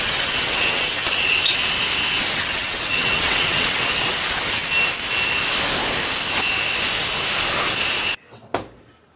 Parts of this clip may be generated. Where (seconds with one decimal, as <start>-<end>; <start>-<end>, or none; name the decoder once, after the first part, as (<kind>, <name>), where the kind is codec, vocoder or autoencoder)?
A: 0.0-1.6 (vocoder, WaveNeXt); 2.3-4.2; 8.1-8.5